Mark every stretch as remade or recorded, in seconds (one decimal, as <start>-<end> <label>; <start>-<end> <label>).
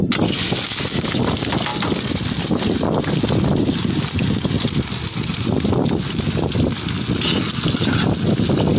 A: 0.0-1.7 recorded; 1.7-3.0 remade; 3.0-8.8 recorded